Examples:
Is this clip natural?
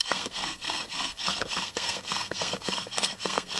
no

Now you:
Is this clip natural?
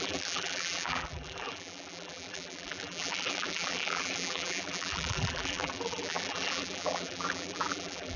no